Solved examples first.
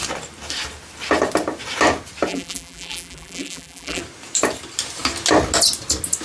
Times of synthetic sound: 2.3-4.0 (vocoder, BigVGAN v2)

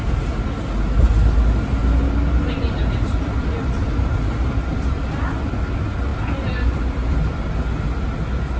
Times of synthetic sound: none

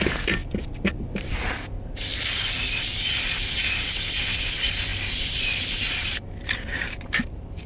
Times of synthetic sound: 4.9-5.4 (vocoder, BigVGAN v2); 6.7-7.7

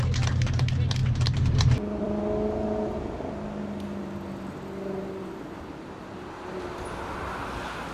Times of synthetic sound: 1.0-2.2 (vocoder, BigVGAN v2)